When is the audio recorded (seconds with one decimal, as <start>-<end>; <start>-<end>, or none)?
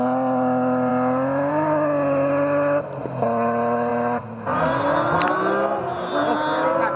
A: 0.0-7.0